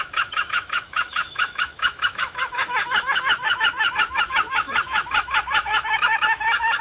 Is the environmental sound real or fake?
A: fake